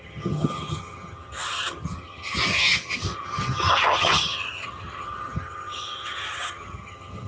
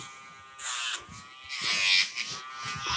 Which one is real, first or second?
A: second